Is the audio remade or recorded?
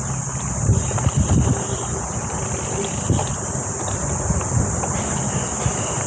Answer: recorded